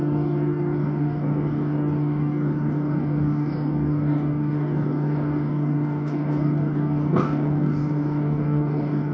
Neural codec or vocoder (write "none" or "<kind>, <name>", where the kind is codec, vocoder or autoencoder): codec, DAC